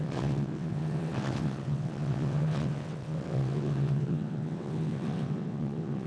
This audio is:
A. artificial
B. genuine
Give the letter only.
A